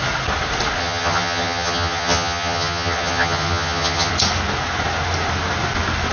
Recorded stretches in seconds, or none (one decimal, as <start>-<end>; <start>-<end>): 0.0-0.8; 4.1-6.1

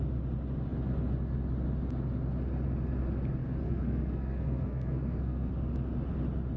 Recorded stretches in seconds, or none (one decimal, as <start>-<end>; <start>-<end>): 0.0-3.4; 5.5-6.6

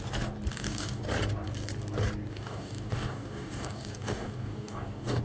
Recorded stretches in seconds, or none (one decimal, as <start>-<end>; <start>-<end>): 0.0-0.5; 1.0-2.3

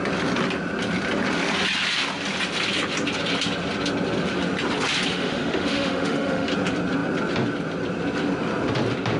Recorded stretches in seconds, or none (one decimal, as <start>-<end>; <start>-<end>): 0.0-5.1; 6.5-9.2

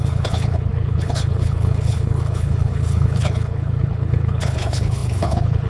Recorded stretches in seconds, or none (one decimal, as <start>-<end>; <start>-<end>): none

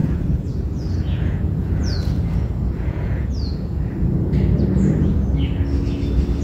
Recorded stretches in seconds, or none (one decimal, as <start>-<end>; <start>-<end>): 3.8-6.4

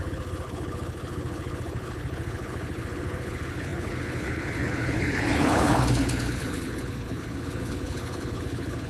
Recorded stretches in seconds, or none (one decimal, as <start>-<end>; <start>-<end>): none